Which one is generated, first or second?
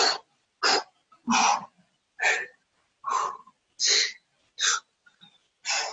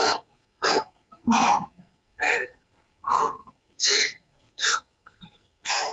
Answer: second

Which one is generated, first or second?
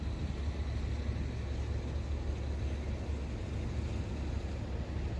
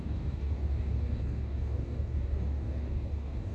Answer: second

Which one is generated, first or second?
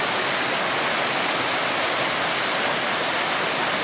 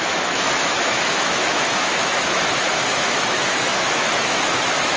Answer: second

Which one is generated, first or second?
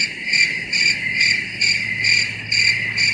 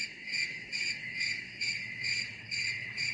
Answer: second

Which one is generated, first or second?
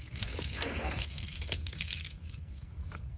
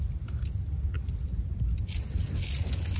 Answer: first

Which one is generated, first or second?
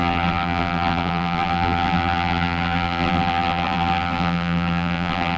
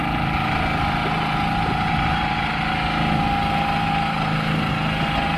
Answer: first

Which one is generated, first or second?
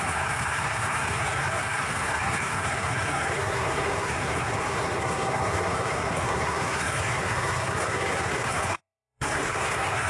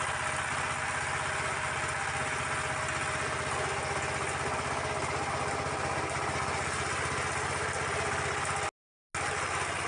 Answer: first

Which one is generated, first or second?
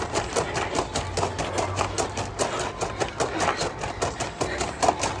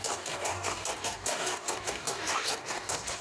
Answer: second